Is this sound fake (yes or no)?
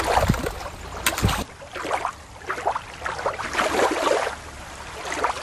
no